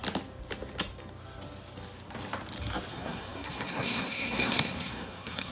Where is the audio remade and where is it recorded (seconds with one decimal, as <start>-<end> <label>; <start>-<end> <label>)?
0.0-2.9 recorded; 2.9-5.5 remade